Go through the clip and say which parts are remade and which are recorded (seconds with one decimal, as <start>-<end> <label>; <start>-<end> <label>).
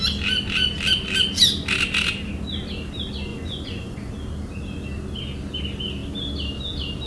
0.0-3.3 recorded; 3.3-4.1 remade; 4.1-7.1 recorded